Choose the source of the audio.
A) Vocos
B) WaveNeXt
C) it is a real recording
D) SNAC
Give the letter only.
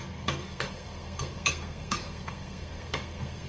D